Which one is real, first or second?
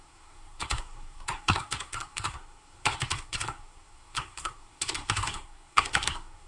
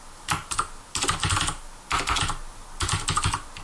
second